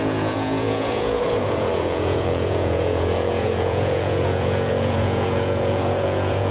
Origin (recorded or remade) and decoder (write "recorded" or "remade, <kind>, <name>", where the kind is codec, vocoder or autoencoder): remade, vocoder, Vocos